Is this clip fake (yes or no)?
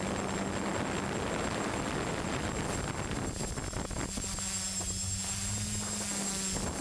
no